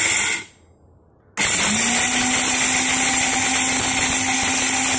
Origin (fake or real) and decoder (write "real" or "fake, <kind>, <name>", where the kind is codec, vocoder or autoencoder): real